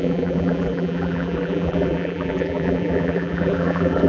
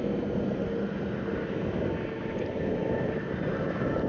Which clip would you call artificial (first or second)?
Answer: first